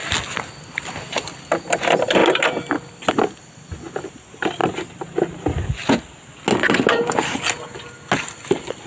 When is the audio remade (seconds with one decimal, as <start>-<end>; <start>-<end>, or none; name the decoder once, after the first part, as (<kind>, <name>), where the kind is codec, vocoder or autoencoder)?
none